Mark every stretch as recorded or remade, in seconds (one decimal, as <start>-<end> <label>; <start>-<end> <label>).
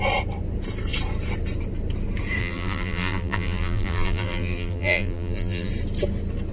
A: 0.0-2.4 recorded; 2.4-5.7 remade; 5.7-6.5 recorded